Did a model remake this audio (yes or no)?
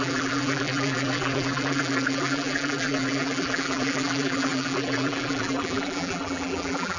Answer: yes